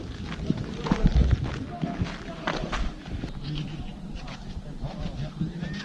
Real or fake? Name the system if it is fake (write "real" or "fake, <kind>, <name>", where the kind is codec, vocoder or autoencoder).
real